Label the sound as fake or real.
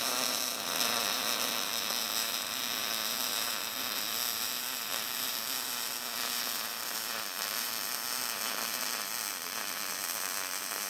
fake